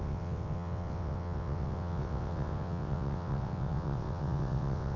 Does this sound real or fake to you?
fake